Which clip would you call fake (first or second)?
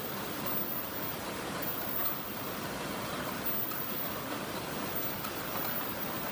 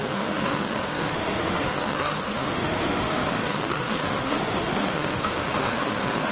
second